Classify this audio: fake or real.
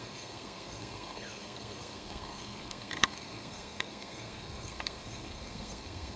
fake